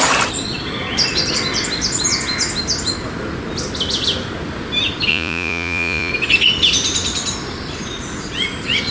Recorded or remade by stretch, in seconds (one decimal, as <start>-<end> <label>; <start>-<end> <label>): 0.0-5.1 recorded; 5.1-6.1 remade; 6.1-8.9 recorded